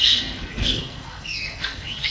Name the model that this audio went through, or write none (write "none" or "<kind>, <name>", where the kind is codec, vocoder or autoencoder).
codec, SNAC